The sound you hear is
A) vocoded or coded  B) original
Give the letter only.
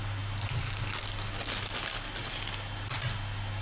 B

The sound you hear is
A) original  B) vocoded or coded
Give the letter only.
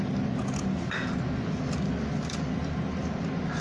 A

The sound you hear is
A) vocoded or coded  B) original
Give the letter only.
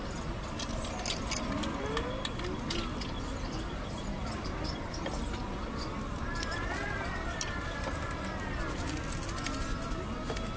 B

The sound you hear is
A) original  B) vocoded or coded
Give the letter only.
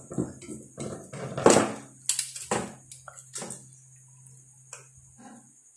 A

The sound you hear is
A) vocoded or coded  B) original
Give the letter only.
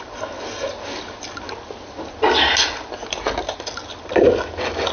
B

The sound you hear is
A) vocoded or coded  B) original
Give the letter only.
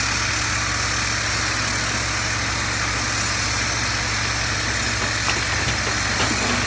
B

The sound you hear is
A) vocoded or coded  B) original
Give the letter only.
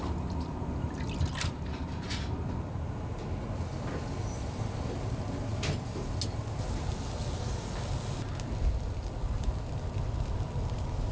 B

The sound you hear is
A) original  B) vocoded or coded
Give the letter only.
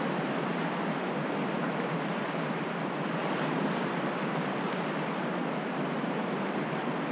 B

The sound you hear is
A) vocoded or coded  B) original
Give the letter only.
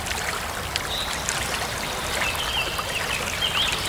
A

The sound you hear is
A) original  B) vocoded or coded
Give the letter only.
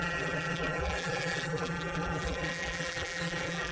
B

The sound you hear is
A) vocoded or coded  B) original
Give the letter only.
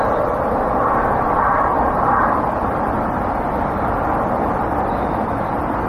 B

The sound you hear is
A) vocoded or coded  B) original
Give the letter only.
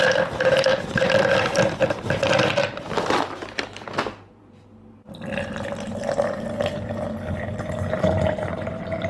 A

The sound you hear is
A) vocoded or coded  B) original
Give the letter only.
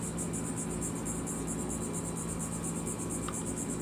B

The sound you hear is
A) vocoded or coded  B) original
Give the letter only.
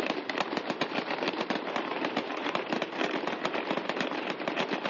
A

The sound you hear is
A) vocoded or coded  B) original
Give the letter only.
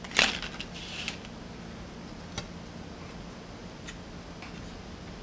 B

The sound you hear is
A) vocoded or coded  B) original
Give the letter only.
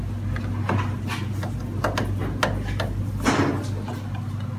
B